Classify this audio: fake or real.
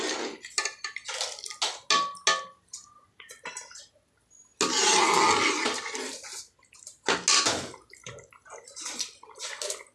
real